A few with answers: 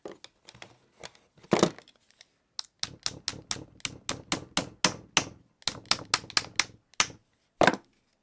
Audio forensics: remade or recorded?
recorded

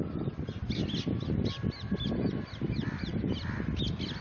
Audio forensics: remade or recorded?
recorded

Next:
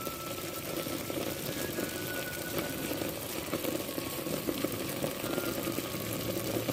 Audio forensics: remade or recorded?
remade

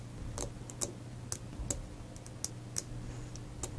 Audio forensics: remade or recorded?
recorded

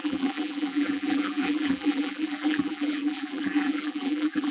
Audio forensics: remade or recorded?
remade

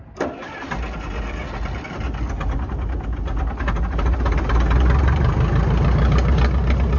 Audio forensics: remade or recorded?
recorded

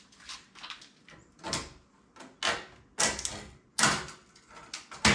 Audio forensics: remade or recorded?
recorded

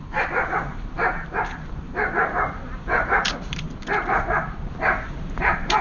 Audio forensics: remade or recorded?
remade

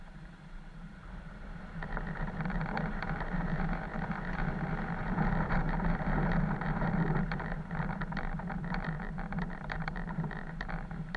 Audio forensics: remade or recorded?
remade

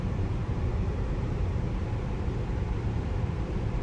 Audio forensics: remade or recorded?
remade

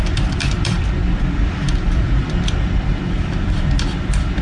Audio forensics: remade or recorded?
remade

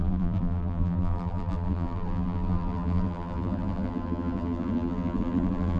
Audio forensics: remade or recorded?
remade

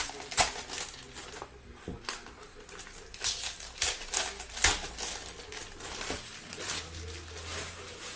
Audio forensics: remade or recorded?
recorded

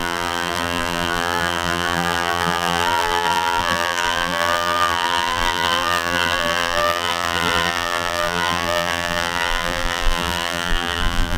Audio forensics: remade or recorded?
remade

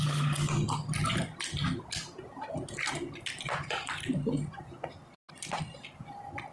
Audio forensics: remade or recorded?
recorded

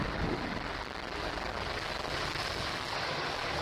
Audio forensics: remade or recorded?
recorded